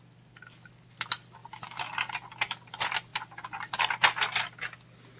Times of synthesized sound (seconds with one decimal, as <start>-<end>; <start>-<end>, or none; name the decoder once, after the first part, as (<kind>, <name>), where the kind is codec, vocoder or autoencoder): 3.1-3.7 (vocoder, BigVGAN v2)